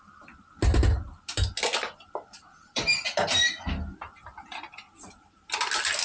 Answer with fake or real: real